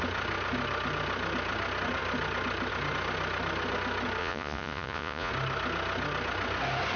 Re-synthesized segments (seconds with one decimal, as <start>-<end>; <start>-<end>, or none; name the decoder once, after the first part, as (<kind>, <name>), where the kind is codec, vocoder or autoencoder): 4.2-5.3 (vocoder, Vocos)